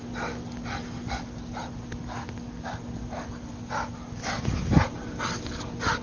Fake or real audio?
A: real